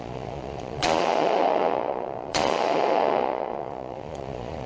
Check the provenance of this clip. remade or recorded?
remade